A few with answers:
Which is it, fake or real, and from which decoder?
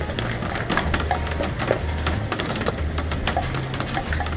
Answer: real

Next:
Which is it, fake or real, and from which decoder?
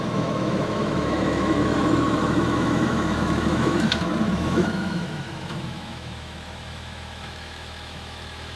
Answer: fake, autoencoder, DAC-VAE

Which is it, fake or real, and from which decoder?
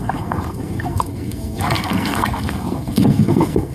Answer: fake, codec, SNAC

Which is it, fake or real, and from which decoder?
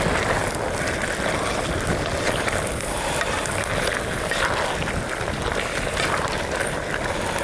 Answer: real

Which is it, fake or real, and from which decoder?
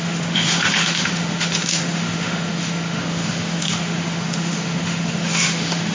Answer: fake, autoencoder, DAC-VAE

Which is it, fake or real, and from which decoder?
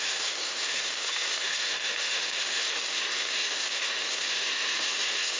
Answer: fake, autoencoder, DAC-VAE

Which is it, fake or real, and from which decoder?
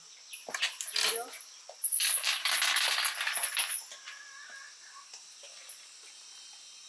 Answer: real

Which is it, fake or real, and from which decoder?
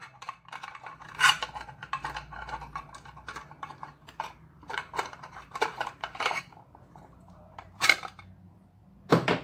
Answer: fake, vocoder, BigVGAN v2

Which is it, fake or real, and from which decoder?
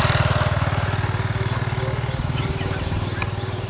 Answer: real